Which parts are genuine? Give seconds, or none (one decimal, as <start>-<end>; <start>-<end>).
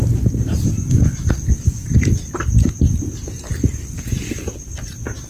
0.0-1.8; 2.8-5.3